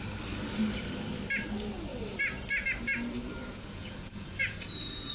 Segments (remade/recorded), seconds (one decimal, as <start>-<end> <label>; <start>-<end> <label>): 0.0-3.4 recorded; 3.4-5.1 remade